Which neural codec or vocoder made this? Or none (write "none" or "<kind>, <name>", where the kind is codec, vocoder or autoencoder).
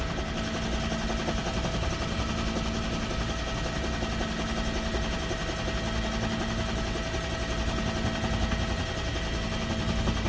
none